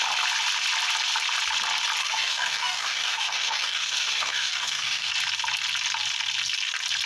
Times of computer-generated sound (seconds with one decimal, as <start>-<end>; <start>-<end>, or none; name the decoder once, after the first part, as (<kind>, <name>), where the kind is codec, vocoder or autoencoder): 2.0-5.1 (codec, DAC)